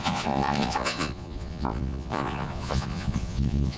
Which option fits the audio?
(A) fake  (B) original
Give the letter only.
A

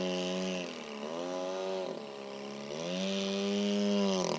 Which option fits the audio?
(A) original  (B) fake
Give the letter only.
A